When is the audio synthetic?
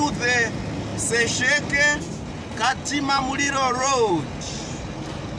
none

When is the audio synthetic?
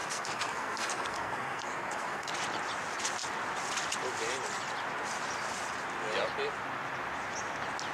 0.0-2.3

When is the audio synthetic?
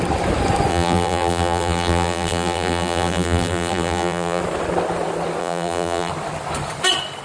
0.7-4.4; 5.4-6.1